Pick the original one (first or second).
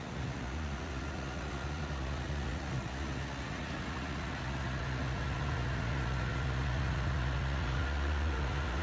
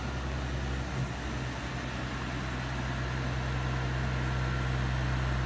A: second